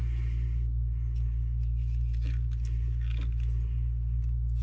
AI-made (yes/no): no